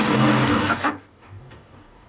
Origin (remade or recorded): remade